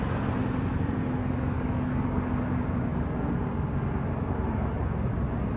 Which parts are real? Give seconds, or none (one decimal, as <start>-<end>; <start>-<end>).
0.0-1.2; 2.2-5.6